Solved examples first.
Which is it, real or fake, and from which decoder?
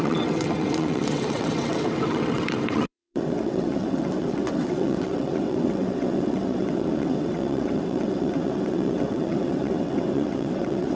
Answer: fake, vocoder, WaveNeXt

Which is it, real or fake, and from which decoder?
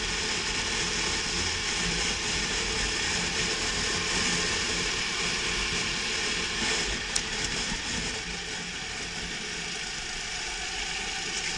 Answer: real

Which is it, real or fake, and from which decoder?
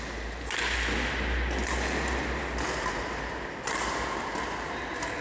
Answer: real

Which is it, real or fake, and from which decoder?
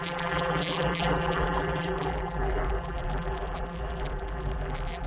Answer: fake, vocoder, BigVGAN v2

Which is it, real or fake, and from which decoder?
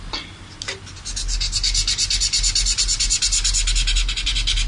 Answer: real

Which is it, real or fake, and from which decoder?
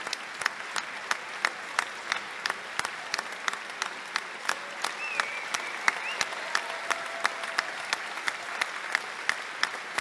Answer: real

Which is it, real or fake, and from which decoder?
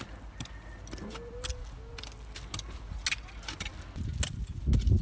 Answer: real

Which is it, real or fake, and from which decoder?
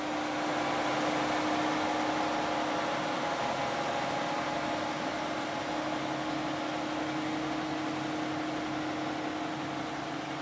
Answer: real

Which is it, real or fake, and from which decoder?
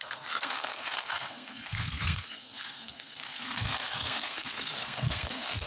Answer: fake, codec, SNAC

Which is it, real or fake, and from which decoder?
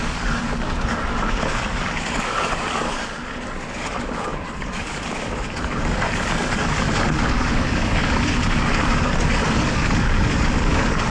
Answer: fake, codec, DAC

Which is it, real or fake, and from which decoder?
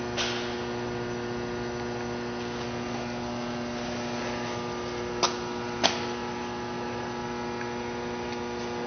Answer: real